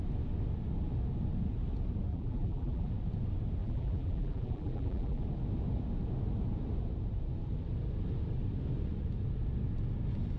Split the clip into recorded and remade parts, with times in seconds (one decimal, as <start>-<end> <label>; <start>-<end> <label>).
0.0-2.1 recorded; 2.1-2.9 remade; 2.9-3.6 recorded; 3.6-5.2 remade; 5.2-10.4 recorded